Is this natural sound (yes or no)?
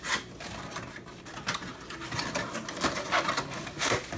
yes